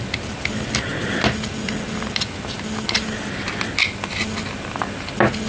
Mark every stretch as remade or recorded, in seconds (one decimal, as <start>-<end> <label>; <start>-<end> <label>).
0.0-5.5 recorded